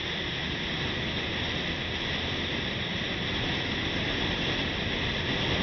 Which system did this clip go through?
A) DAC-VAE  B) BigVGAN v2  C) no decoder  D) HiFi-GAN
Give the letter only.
C